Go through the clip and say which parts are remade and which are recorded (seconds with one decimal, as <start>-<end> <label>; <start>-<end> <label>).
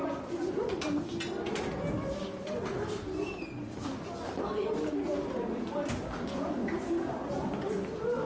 0.0-8.2 recorded